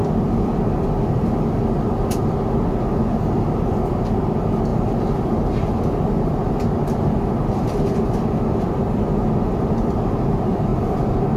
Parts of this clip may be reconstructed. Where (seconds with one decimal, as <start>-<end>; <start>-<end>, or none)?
none